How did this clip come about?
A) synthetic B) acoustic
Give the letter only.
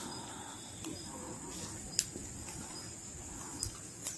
B